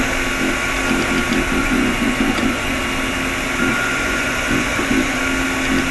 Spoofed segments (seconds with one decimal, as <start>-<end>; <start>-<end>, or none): 1.6-2.8; 3.7-5.2